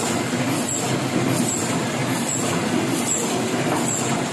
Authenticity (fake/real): real